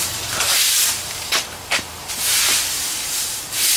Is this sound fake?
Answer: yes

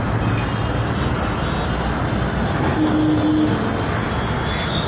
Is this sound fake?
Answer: no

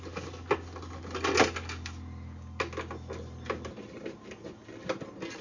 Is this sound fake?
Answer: no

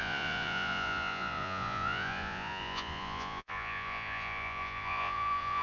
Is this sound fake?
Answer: yes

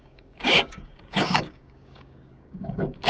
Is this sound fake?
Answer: yes